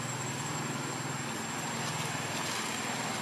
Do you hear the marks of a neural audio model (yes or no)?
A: no